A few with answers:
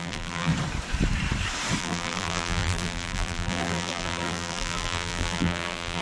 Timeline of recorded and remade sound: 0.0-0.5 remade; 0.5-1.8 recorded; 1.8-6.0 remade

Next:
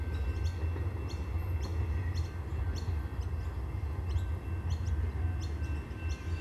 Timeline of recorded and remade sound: 0.0-6.4 recorded

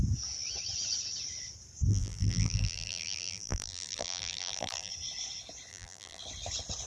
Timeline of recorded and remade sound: 0.0-1.9 recorded; 1.9-4.9 remade; 4.9-5.7 recorded; 5.7-6.2 remade; 6.2-6.9 recorded

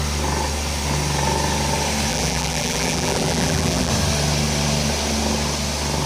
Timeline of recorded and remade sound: 0.0-2.1 recorded; 2.1-3.9 remade; 3.9-6.1 recorded

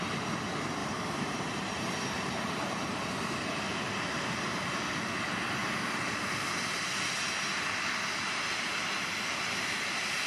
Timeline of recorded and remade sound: 0.0-0.8 recorded; 0.8-3.4 remade; 3.4-10.3 recorded

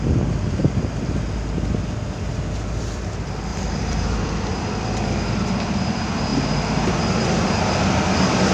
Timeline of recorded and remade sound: 0.0-3.5 recorded; 3.5-4.5 remade; 4.5-8.5 recorded

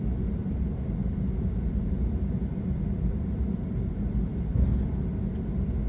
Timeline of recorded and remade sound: 0.0-1.0 recorded; 1.0-4.0 remade; 4.0-5.9 recorded

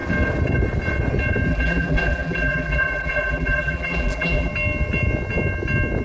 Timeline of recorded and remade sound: 0.0-1.5 recorded; 1.5-4.5 remade; 4.5-6.0 recorded